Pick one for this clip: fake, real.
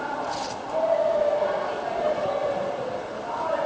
real